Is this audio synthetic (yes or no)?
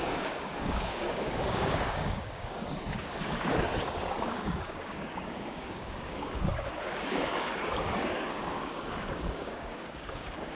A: yes